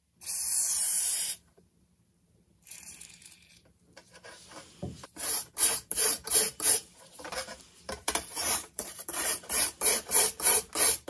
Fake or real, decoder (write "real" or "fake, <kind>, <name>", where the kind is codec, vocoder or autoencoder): fake, vocoder, BigVGAN v2